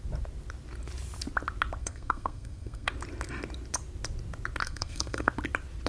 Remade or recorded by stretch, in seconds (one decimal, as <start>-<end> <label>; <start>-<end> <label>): 0.0-1.8 recorded; 1.8-2.9 remade; 2.9-4.6 recorded; 4.6-5.3 remade; 5.3-5.9 recorded